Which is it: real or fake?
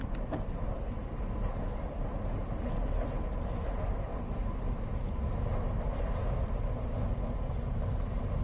real